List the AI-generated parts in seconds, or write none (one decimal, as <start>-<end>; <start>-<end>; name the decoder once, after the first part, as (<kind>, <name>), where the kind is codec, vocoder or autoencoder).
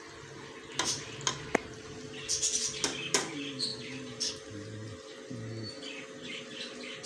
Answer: none